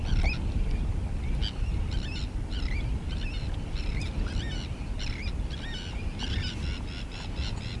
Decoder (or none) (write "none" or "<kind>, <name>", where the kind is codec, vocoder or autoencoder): none